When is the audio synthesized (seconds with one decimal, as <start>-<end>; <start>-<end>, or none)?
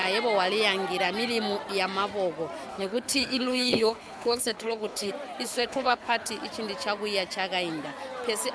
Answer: 2.7-5.1; 5.5-6.3